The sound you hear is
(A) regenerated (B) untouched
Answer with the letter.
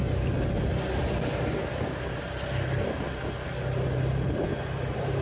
B